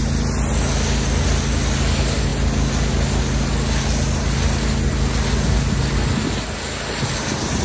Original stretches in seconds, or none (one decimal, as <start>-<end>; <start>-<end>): 0.0-7.6